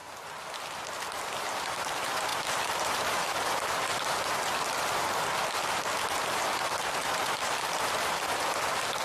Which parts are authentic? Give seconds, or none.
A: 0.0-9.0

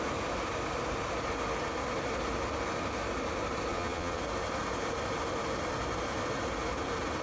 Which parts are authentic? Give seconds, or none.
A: 0.0-3.7; 4.2-7.2